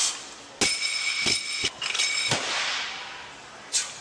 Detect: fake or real real